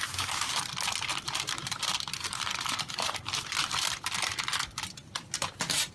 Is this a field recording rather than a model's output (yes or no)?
yes